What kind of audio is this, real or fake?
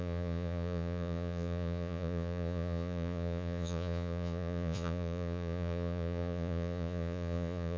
fake